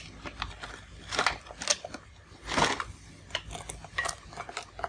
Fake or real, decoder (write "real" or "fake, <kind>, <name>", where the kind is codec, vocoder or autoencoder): real